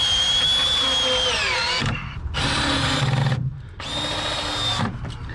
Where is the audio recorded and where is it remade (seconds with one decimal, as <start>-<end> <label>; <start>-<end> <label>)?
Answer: 0.0-5.3 recorded